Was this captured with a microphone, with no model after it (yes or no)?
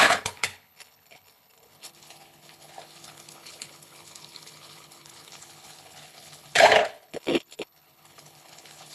no